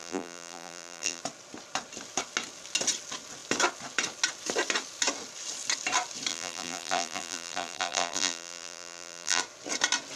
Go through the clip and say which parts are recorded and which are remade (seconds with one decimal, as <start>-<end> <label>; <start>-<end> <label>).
0.0-1.2 remade; 1.2-6.3 recorded; 6.3-9.4 remade; 9.4-10.2 recorded